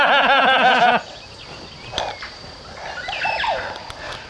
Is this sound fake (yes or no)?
no